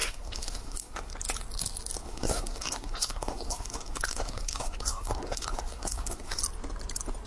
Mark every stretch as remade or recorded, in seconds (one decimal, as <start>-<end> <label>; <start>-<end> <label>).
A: 0.0-1.1 remade; 1.1-2.0 recorded; 2.0-6.4 remade; 6.4-7.3 recorded